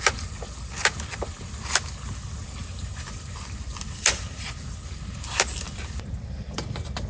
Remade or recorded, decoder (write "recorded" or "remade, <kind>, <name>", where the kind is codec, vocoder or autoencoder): recorded